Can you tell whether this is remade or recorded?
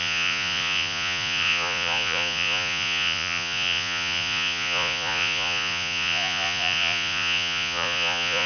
remade